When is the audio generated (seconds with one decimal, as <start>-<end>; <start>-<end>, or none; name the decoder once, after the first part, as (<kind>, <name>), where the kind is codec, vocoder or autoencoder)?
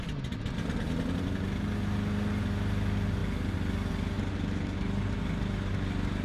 none